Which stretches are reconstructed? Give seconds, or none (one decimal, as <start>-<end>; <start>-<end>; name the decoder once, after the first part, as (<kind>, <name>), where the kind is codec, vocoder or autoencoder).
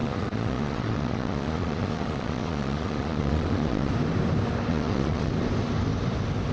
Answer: 0.0-3.9 (vocoder, Vocos); 4.7-5.3